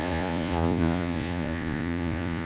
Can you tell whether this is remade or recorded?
remade